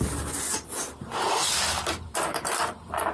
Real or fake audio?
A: real